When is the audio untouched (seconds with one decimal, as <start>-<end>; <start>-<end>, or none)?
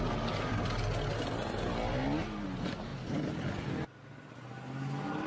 0.0-5.3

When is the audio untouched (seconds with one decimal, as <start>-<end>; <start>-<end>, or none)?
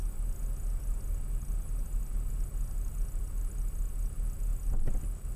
0.0-5.4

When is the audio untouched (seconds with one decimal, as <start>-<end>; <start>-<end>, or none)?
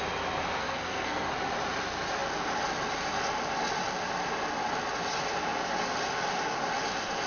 0.0-0.6; 1.3-7.3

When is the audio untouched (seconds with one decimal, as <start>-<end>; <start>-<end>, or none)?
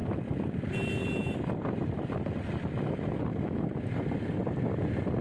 0.0-5.2